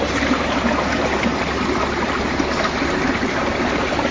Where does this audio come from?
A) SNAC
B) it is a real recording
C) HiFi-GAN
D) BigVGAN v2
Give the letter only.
B